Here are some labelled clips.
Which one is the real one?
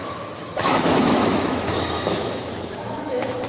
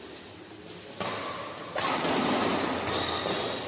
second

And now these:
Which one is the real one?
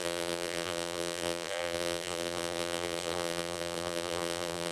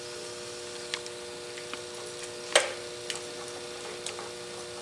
second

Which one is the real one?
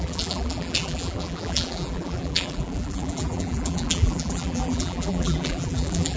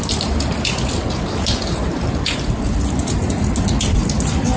second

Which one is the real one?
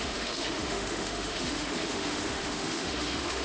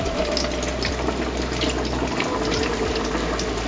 second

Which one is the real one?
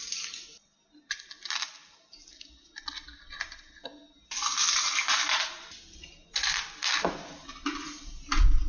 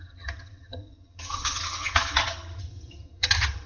first